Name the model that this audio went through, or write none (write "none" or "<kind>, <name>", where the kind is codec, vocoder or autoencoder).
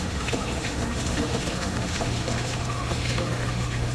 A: autoencoder, DAC-VAE